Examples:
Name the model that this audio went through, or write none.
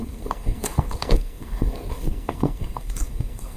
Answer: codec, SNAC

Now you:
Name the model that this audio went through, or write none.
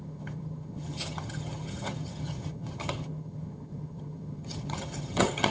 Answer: vocoder, HiFi-GAN